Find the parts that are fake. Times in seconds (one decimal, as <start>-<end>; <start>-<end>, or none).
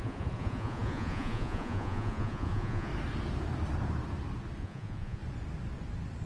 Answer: 0.0-2.9; 4.6-5.2